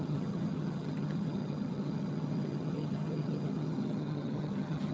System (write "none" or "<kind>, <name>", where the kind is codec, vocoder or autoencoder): vocoder, HiFi-GAN